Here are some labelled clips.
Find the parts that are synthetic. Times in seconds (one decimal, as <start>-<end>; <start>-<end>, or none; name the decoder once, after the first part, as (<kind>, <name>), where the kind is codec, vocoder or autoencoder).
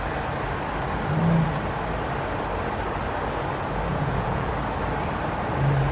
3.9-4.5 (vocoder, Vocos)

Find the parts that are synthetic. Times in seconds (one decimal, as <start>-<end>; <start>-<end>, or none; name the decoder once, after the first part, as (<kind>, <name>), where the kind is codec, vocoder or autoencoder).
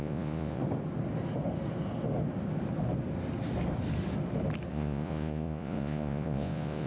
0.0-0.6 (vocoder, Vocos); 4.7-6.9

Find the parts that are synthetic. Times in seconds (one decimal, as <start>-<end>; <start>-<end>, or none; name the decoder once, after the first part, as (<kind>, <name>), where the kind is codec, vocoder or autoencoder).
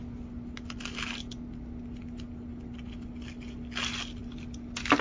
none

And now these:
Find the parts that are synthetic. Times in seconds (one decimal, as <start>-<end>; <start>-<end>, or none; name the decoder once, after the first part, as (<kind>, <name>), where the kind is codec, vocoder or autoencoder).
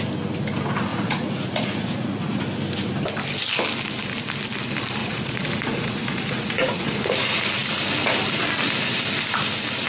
0.9-2.4 (vocoder, Vocos); 5.0-7.1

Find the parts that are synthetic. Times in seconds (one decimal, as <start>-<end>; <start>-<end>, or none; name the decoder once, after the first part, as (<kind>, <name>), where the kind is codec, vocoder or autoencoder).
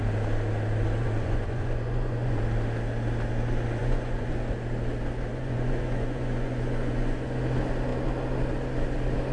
1.0-2.4 (vocoder, Vocos); 3.8-4.4; 5.3-7.4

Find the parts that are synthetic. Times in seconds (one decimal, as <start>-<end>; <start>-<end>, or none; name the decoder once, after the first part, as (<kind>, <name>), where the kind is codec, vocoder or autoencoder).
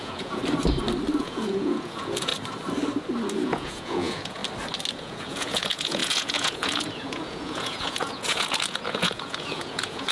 0.0-0.4 (vocoder, Vocos); 1.2-2.3; 3.3-4.4; 4.9-10.1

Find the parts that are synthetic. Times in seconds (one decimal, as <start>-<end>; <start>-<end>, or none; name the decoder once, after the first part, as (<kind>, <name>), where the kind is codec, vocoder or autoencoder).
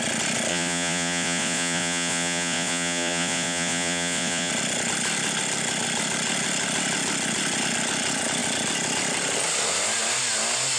0.5-4.5 (vocoder, Vocos)